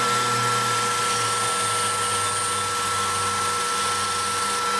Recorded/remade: recorded